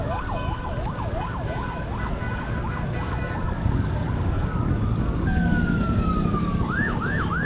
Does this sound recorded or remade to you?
remade